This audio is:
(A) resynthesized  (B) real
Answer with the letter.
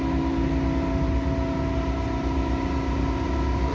B